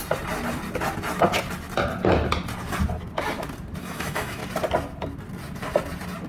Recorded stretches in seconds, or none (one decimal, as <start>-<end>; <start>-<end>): 0.0-3.8; 4.4-6.3